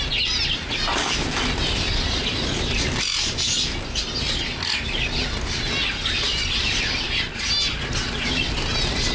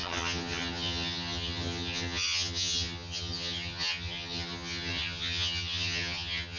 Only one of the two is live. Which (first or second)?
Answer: first